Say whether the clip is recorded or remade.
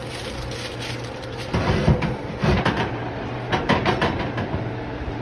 remade